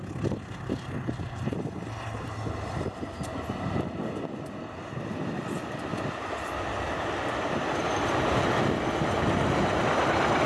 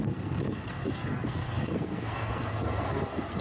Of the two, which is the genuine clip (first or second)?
first